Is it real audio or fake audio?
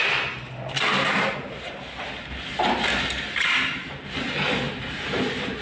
real